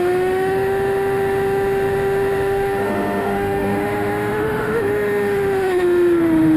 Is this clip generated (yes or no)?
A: yes